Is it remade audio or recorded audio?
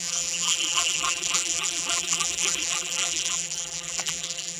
remade